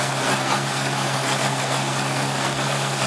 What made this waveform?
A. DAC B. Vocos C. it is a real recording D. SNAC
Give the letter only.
D